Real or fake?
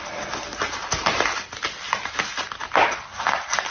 real